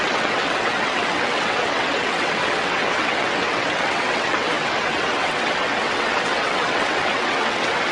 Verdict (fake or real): fake